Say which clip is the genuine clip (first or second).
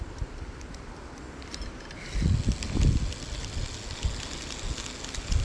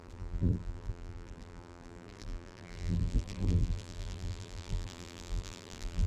first